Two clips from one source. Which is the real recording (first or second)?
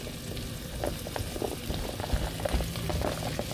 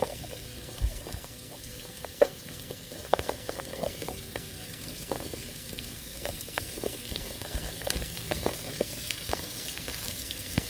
first